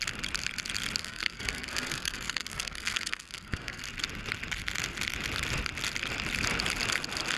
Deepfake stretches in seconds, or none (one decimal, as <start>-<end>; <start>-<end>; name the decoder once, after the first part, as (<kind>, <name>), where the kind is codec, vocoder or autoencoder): 1.0-3.8 (codec, SNAC)